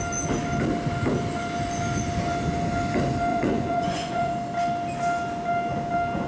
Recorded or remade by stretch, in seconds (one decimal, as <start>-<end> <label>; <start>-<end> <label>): 0.0-3.3 recorded; 3.3-4.3 remade; 4.3-6.3 recorded